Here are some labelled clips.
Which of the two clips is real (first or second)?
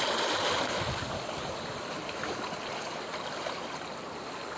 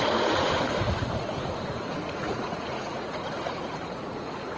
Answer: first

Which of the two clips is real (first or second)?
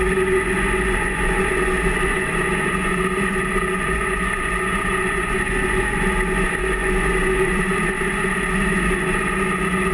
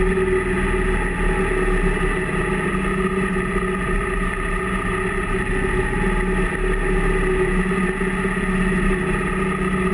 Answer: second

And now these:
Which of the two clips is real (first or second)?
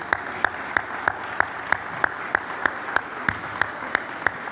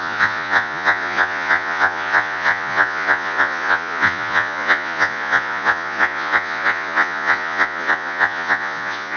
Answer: first